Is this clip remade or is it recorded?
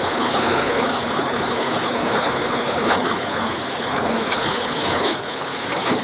remade